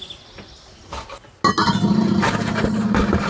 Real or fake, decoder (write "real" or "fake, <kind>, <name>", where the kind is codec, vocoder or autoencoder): real